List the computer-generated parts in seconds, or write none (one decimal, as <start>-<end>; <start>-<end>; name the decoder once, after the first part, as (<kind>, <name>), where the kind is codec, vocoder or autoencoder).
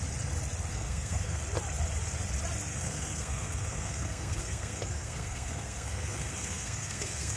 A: 0.7-1.4 (codec, SNAC); 2.7-7.4